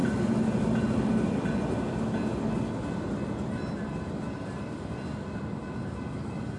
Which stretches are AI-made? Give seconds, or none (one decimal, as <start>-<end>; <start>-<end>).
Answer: none